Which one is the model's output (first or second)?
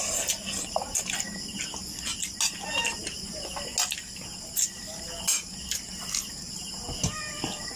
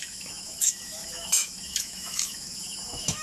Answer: second